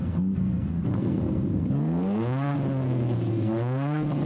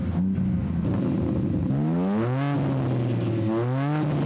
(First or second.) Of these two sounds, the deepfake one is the first